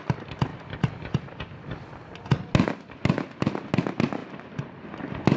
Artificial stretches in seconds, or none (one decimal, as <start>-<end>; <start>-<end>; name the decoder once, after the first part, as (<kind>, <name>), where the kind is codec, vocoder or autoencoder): none